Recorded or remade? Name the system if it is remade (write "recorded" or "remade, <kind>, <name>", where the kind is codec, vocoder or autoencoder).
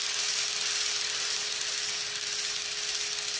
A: recorded